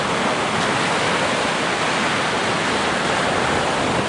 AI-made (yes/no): no